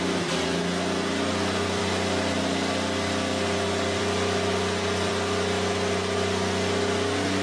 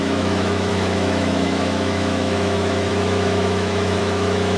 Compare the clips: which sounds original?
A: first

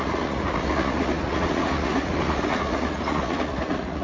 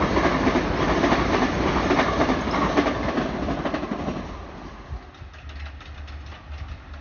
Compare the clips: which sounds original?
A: second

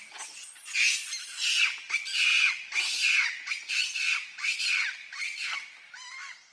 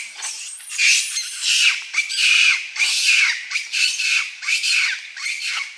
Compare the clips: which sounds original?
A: first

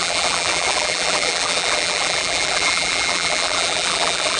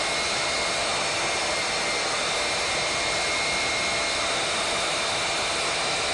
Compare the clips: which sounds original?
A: second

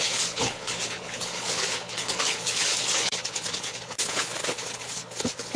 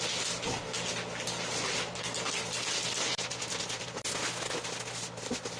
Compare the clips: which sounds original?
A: second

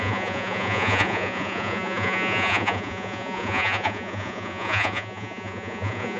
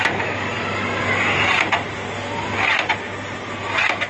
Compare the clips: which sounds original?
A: second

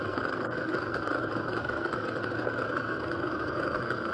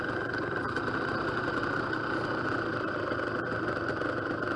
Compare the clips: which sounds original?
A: second